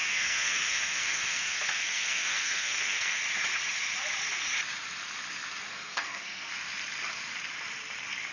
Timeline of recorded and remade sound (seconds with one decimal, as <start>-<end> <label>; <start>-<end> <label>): 0.0-3.2 remade; 3.2-5.7 recorded; 5.7-6.5 remade; 6.5-8.3 recorded